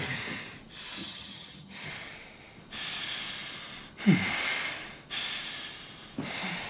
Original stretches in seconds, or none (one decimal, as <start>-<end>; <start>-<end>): 0.0-1.0; 1.9-6.7